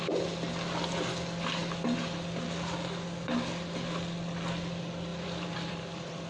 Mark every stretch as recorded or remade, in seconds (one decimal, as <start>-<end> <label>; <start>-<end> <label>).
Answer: 0.0-5.1 recorded; 5.1-6.3 remade